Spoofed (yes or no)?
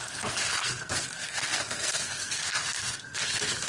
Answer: yes